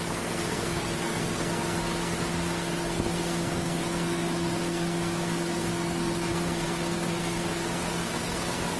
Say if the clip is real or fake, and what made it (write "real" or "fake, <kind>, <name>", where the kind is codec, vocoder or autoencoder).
fake, codec, SNAC